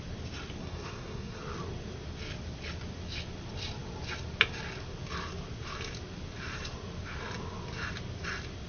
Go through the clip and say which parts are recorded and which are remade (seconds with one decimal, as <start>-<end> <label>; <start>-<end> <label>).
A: 0.0-0.6 recorded; 0.6-1.4 remade; 1.4-8.7 recorded